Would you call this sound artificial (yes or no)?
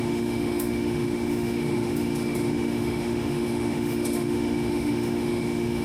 yes